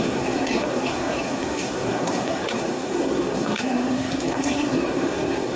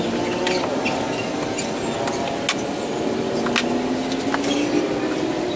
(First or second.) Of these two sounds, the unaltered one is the second